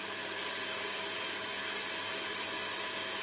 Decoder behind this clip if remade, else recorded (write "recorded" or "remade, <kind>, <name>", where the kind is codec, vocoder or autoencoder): recorded